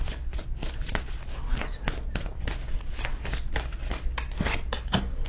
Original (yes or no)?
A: yes